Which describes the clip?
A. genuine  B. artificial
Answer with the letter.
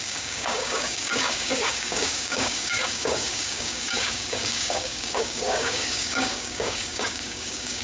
B